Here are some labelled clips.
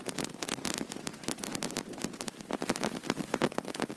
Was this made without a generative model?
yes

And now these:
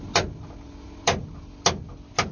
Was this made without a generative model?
yes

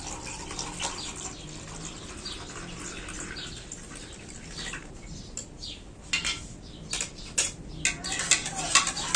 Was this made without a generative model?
yes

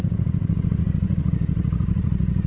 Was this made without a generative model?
no